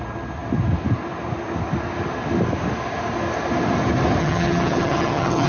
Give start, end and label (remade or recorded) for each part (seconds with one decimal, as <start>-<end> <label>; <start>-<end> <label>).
0.0-4.2 recorded; 4.2-5.5 remade